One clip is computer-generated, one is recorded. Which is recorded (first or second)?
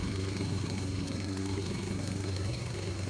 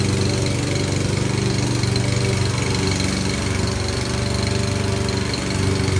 second